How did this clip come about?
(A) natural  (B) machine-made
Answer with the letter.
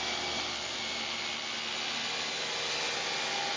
A